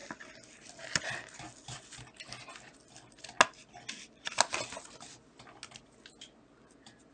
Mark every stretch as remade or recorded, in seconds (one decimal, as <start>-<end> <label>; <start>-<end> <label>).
0.0-7.1 recorded